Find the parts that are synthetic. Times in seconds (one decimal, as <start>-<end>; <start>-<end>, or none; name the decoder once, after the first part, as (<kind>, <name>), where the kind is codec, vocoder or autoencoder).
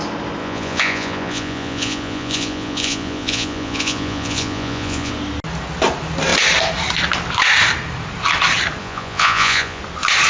0.4-5.1 (vocoder, Vocos); 8.8-9.8